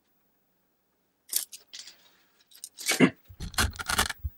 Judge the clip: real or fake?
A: real